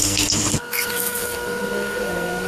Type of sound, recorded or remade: remade